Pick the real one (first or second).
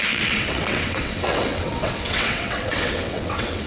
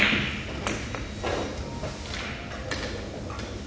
second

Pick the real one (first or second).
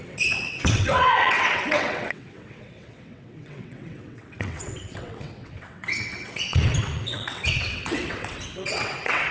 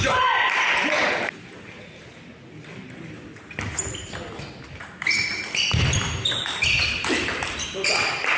second